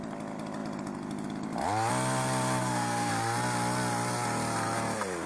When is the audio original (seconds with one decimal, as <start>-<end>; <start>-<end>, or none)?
0.0-2.6; 3.1-5.3